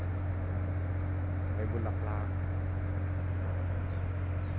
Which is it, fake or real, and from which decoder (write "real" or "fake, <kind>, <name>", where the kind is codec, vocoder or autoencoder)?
real